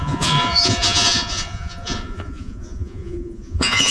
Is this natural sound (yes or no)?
no